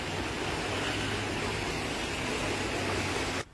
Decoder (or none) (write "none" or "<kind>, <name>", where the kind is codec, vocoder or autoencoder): none